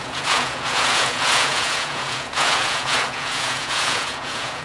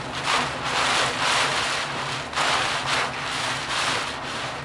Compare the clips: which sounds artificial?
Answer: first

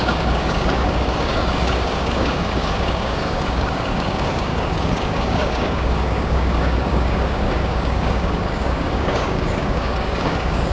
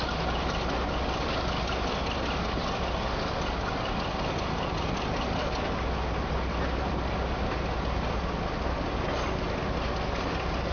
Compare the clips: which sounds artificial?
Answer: first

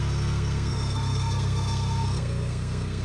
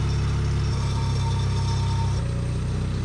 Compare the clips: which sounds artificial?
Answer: first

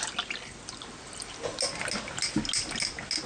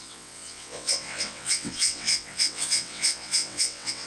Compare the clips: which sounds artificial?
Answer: second